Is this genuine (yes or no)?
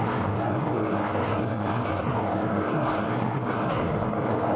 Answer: no